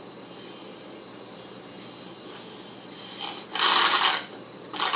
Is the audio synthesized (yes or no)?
no